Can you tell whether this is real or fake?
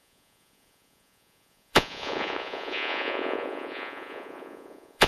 fake